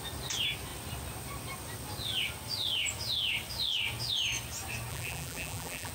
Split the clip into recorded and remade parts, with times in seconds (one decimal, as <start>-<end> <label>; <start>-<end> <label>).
0.0-4.9 recorded; 4.9-5.9 remade